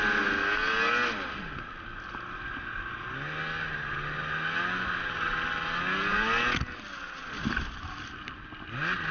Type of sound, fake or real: real